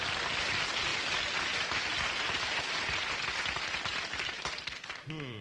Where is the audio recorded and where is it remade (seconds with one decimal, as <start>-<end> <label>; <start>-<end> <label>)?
0.0-5.4 remade